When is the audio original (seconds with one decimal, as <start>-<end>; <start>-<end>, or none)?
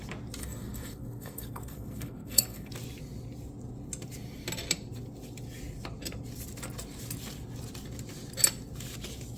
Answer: 0.0-0.4; 2.7-9.4